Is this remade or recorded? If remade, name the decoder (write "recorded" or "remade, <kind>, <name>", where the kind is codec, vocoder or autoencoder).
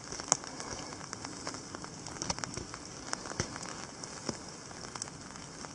recorded